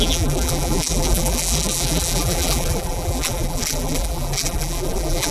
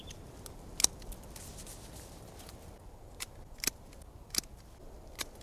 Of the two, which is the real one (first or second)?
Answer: second